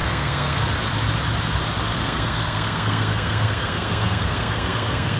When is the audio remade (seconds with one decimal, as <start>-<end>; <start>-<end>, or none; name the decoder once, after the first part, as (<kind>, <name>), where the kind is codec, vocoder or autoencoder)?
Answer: 0.0-0.6 (codec, SNAC); 1.9-5.2